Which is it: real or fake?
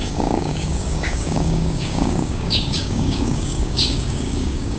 fake